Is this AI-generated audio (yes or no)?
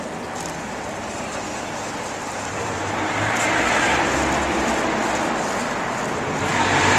no